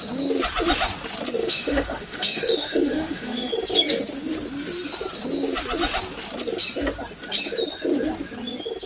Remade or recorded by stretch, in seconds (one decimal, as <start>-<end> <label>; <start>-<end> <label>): 0.0-1.4 recorded; 1.4-3.5 remade; 3.5-8.9 recorded